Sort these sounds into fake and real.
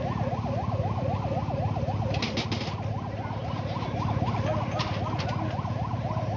real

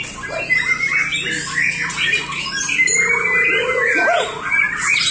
real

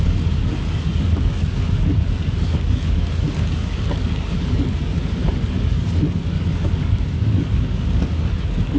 fake